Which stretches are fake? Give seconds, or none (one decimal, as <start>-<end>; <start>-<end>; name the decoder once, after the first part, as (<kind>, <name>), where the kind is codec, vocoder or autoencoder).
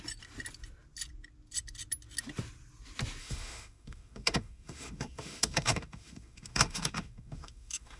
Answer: 3.2-8.0 (autoencoder, DAC-VAE)